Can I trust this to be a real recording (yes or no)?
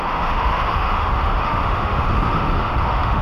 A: no